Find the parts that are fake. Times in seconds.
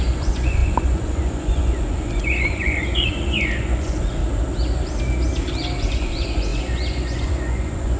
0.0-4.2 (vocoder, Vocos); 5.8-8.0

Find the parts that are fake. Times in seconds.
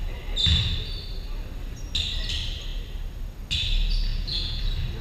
4.1-4.6 (vocoder, Vocos)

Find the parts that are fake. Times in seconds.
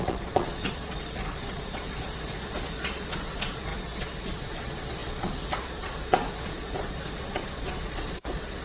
0.0-8.6 (vocoder, Vocos)